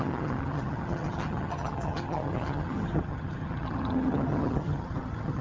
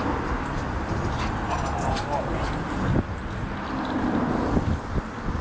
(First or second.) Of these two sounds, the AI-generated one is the first